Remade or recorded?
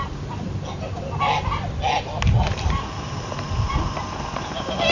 recorded